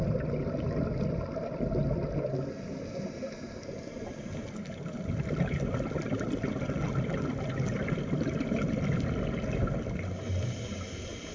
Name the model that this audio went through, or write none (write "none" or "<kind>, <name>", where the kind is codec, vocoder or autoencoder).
none